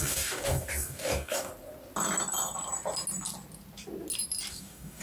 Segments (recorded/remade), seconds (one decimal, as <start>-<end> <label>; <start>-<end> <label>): 0.0-1.5 remade; 1.5-4.5 recorded; 4.5-5.0 remade